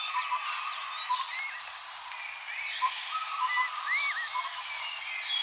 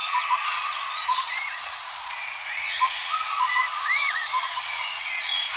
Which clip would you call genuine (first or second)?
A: first